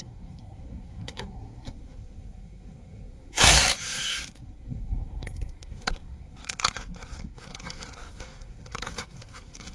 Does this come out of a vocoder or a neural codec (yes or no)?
yes